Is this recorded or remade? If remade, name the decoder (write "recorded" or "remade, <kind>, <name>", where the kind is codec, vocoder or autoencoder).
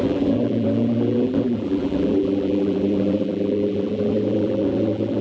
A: remade, vocoder, BigVGAN v2